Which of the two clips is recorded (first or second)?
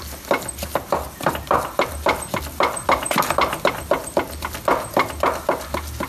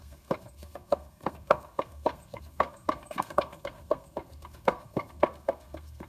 first